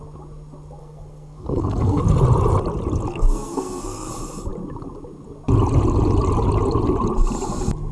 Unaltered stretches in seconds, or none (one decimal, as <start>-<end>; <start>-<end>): 0.0-0.8; 2.0-3.1; 4.1-7.9

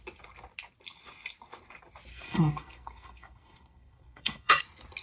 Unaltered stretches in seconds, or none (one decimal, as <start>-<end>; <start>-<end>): 0.0-2.1; 4.6-5.0

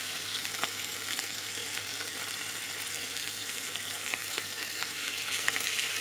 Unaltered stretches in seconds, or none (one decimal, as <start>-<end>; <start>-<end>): 2.2-2.9

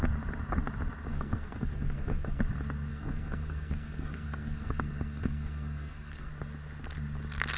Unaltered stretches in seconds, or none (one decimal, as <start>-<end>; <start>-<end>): 0.0-1.1; 2.4-2.9; 6.3-7.6

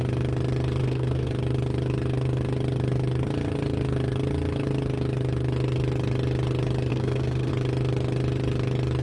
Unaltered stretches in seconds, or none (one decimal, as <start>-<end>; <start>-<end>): 0.0-0.8; 1.3-6.9; 7.5-9.0

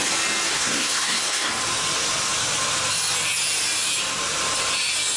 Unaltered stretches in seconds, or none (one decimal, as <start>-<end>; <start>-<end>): 0.0-0.5; 1.5-5.2

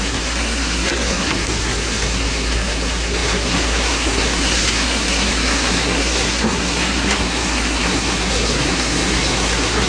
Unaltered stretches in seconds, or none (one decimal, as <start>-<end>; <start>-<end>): none